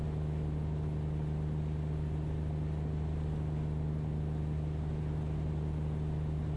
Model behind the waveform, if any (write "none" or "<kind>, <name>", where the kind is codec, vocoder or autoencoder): none